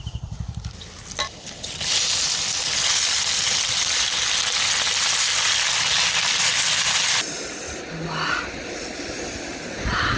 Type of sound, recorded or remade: recorded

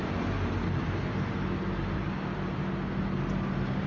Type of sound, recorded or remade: recorded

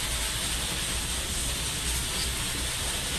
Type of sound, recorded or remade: recorded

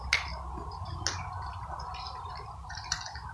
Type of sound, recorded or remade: recorded